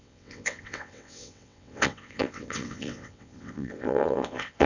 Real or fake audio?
fake